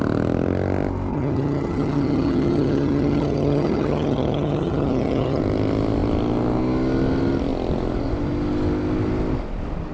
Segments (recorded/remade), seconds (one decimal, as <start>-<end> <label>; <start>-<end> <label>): 0.0-1.1 recorded; 1.1-5.4 remade; 5.4-9.9 recorded